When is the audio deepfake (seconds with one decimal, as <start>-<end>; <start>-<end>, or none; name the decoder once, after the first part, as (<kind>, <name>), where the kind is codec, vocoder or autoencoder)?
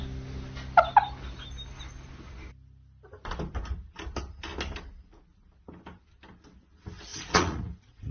7.1-8.1 (vocoder, Vocos)